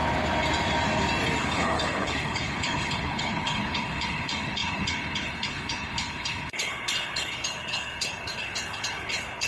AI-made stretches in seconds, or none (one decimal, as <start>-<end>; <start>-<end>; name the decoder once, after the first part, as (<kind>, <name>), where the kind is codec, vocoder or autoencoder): 1.4-9.5 (codec, HILCodec)

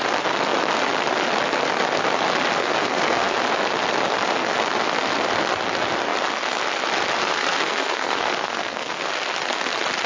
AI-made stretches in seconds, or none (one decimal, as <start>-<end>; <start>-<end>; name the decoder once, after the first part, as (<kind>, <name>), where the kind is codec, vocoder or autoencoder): 2.6-3.4 (codec, SNAC); 7.2-9.1

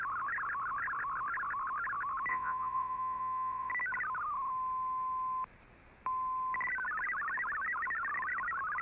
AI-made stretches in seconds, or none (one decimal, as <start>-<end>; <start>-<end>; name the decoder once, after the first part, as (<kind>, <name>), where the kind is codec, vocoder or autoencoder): 2.3-3.7 (vocoder, Vocos)

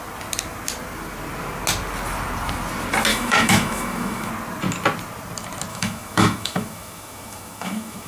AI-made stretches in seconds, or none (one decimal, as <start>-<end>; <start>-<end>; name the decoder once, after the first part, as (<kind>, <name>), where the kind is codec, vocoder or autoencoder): 3.1-4.3 (autoencoder, DAC-VAE); 5.7-8.1

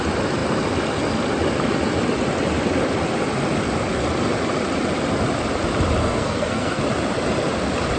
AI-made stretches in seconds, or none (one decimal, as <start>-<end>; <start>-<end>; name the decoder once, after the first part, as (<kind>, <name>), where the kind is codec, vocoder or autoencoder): 6.0-6.8 (codec, SNAC)

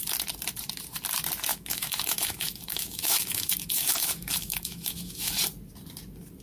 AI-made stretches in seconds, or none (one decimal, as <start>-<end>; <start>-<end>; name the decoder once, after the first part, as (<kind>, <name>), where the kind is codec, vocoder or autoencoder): 1.5-5.3 (autoencoder, DAC-VAE)

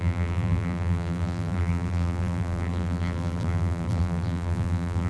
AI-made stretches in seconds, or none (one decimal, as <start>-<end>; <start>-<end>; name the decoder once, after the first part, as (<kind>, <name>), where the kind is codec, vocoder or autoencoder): 0.0-5.1 (vocoder, BigVGAN v2)

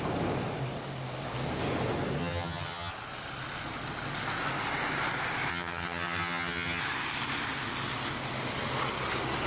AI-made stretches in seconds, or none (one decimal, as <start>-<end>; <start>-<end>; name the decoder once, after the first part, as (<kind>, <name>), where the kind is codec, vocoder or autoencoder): 2.2-2.9 (vocoder, HiFi-GAN); 5.5-6.8